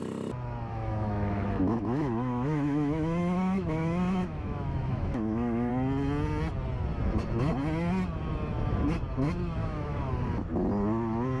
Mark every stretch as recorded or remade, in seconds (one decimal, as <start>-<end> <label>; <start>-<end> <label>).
0.0-0.7 recorded; 0.7-5.7 remade; 5.7-9.6 recorded; 9.6-10.1 remade; 10.1-11.4 recorded